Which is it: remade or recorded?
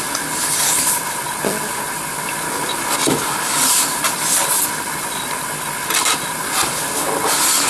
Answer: recorded